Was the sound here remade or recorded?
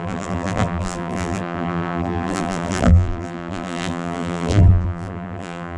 remade